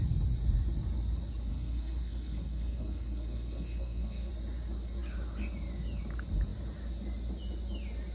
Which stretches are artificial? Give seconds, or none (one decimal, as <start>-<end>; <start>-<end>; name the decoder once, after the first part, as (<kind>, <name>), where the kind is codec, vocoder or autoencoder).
1.5-4.3 (codec, SNAC)